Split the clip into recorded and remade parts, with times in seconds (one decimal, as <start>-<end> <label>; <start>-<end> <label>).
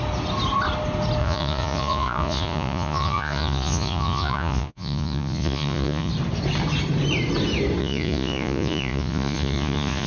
0.0-1.2 recorded; 1.2-6.1 remade; 6.1-7.8 recorded; 7.8-10.1 remade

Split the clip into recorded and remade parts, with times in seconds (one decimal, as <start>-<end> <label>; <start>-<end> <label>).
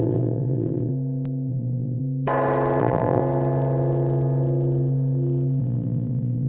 0.0-0.9 remade; 0.9-1.5 recorded; 1.5-2.0 remade; 2.0-2.8 recorded; 2.8-3.2 remade; 3.2-5.6 recorded; 5.6-6.5 remade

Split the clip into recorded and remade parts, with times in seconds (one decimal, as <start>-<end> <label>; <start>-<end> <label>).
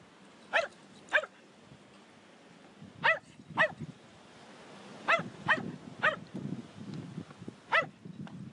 0.0-8.5 recorded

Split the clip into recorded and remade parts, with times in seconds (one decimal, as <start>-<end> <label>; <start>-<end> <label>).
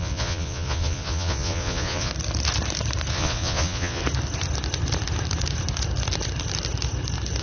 0.0-2.1 remade; 2.1-3.1 recorded; 3.1-4.0 remade; 4.0-7.4 recorded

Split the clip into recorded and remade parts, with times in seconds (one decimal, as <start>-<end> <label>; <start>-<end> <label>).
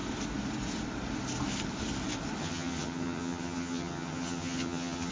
0.0-2.4 recorded; 2.4-5.1 remade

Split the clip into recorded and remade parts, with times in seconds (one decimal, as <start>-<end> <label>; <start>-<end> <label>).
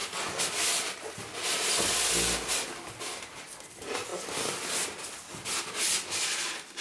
0.0-6.8 recorded